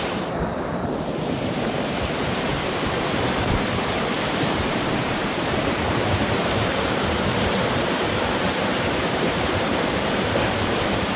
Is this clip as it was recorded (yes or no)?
no